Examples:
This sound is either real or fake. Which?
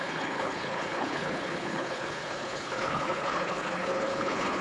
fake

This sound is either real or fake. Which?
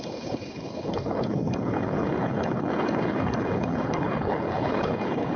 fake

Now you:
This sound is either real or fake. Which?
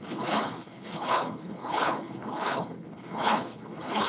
fake